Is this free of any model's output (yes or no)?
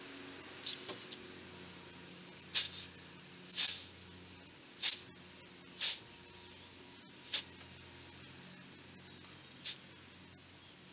yes